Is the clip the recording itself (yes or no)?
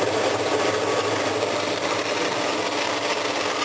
yes